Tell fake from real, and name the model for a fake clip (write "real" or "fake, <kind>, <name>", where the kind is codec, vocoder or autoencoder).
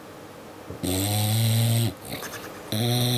real